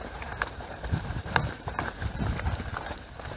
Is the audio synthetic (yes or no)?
yes